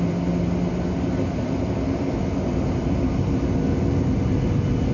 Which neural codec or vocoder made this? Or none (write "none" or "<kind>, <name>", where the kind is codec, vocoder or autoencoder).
none